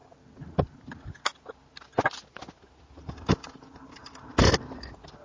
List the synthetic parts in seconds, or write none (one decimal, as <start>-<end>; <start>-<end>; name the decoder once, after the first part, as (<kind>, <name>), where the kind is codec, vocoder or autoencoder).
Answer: none